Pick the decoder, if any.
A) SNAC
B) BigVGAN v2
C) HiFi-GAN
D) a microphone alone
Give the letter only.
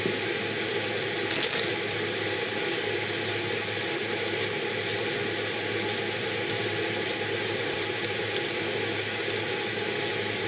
D